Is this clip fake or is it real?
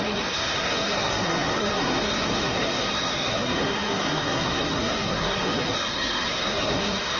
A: fake